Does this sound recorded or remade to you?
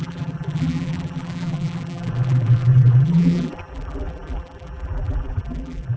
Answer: remade